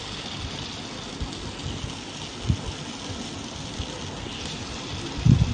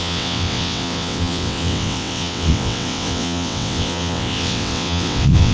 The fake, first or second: second